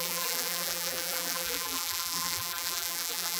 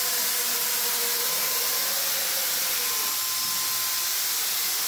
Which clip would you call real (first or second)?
second